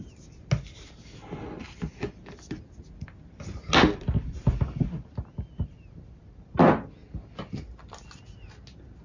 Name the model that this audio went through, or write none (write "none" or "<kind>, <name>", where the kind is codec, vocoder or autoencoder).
none